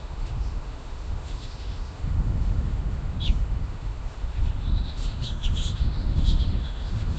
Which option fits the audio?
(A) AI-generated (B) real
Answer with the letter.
A